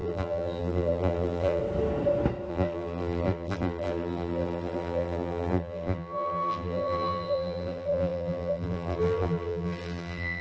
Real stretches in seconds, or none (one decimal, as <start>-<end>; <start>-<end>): 1.6-2.5